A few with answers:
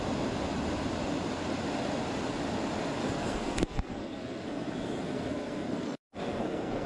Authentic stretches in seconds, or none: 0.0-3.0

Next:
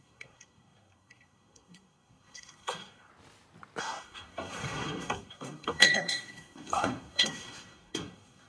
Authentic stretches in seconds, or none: 3.1-3.8

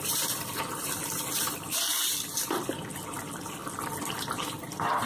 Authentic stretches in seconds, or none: 0.0-5.1

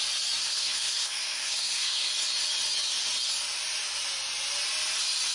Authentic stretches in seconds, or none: 0.0-0.4; 2.1-5.3

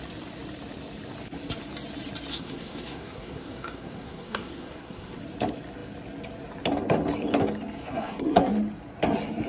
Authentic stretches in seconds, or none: 0.0-2.3; 5.2-7.8; 8.5-9.5

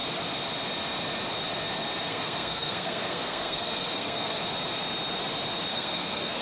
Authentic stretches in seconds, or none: 0.0-2.1; 4.4-5.7

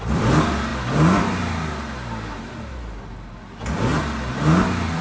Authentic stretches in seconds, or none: 0.0-5.0